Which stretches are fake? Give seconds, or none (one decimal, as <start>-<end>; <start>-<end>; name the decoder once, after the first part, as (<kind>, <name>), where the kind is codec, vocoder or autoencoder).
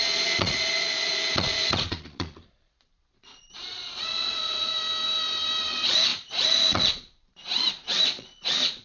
0.0-4.7 (vocoder, Vocos); 5.6-8.8